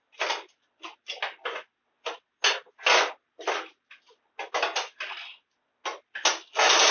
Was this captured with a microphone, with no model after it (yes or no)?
yes